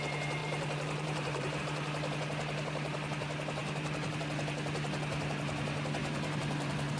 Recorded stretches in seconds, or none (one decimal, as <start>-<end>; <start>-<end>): 0.0-0.4; 1.6-3.6; 4.2-6.0